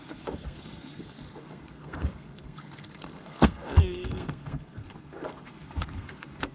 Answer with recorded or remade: remade